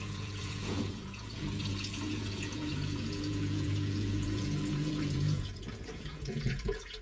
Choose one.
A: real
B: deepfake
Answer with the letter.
B